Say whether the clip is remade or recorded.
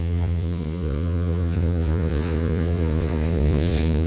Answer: remade